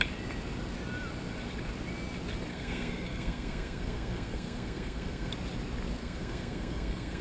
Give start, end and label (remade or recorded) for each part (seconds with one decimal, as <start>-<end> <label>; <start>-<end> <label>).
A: 0.0-2.5 recorded; 2.5-5.3 remade; 5.3-6.0 recorded; 6.0-7.2 remade